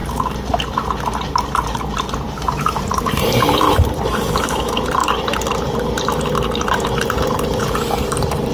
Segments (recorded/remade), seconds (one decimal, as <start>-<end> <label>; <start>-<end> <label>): 0.0-5.0 remade; 5.0-5.5 recorded; 5.5-8.5 remade